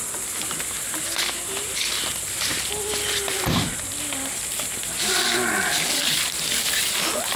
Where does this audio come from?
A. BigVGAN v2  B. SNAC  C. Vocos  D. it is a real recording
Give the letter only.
D